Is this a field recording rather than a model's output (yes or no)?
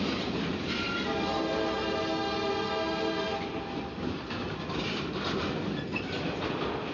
yes